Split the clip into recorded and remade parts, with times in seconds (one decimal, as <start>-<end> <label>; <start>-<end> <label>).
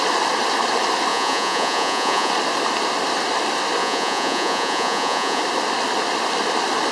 0.0-1.1 recorded; 1.1-2.3 remade; 2.3-3.8 recorded; 3.8-5.4 remade; 5.4-6.9 recorded